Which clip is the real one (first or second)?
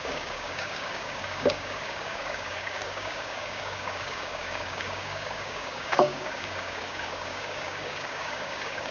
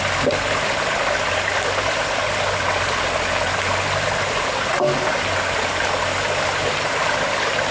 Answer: second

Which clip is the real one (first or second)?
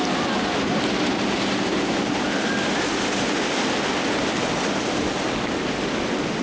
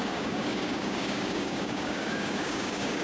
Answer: first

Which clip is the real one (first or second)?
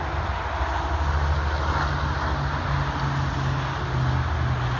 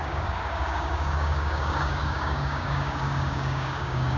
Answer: first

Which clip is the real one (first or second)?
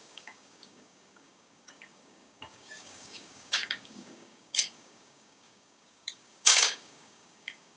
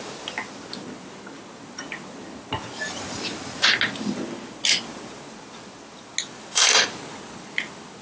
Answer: second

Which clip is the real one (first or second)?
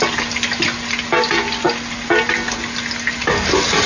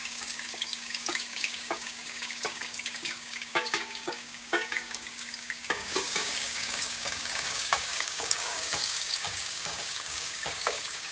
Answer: first